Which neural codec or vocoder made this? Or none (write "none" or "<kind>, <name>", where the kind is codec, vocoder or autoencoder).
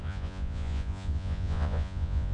vocoder, Vocos